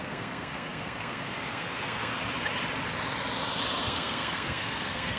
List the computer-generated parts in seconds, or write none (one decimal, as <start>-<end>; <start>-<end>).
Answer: 0.0-2.1; 3.8-5.2